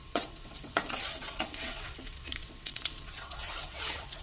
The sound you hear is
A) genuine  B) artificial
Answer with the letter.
B